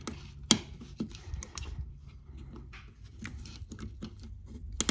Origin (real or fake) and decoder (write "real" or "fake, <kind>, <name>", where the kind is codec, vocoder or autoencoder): real